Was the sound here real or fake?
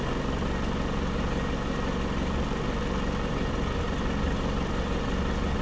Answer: real